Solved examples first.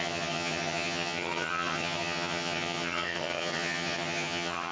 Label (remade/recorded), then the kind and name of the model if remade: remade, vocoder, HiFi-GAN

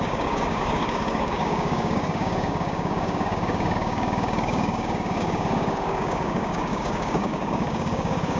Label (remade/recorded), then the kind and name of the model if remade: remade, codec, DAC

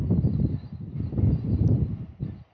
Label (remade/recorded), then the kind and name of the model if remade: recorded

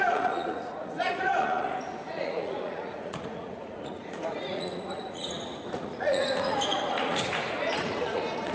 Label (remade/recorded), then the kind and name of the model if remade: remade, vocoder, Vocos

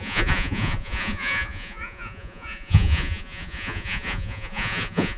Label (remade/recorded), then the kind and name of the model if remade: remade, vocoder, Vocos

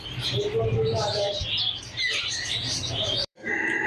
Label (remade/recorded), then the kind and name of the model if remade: remade, vocoder, BigVGAN v2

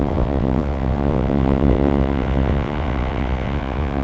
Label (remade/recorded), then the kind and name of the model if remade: remade, vocoder, WaveNeXt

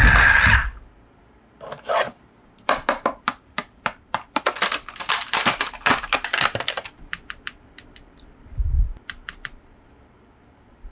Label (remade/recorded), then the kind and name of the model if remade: remade, vocoder, BigVGAN v2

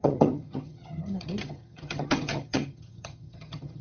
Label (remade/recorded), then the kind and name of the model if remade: remade, vocoder, HiFi-GAN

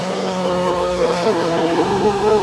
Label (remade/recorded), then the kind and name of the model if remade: remade, codec, SNAC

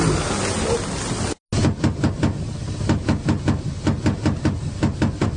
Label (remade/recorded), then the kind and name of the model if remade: recorded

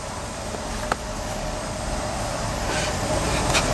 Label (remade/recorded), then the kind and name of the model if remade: recorded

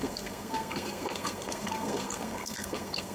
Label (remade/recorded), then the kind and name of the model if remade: remade, codec, SNAC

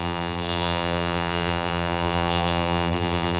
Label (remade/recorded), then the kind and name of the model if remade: remade, vocoder, BigVGAN v2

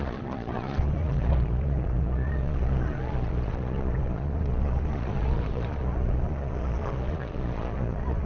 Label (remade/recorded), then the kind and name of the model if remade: remade, vocoder, Vocos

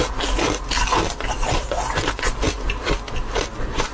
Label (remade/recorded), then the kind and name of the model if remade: recorded